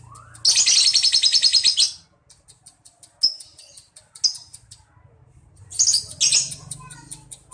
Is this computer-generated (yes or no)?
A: no